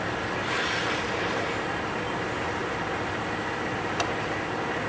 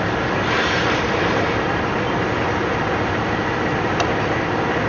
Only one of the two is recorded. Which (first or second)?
first